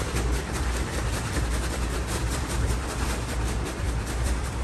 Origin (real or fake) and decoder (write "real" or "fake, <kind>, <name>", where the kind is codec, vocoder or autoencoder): fake, vocoder, BigVGAN v2